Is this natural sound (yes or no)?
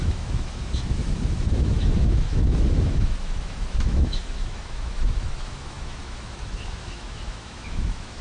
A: no